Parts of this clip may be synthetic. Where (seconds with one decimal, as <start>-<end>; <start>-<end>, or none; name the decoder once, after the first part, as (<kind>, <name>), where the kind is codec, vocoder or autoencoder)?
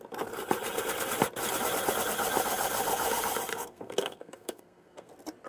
3.5-5.1 (codec, SNAC)